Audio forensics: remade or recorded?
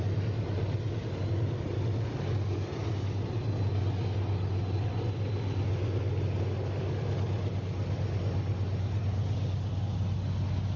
recorded